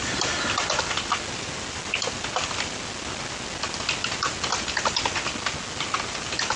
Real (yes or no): yes